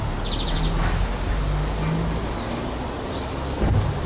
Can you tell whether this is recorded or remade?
recorded